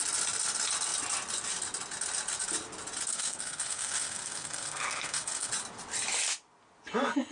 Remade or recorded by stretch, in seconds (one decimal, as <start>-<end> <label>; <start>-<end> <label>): 0.0-3.1 recorded; 3.1-5.5 remade; 5.5-7.3 recorded